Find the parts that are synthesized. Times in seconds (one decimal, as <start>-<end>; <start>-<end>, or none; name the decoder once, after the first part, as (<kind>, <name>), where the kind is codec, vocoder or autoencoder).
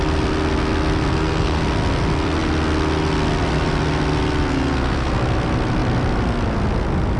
1.1-1.6 (codec, SNAC); 4.5-5.1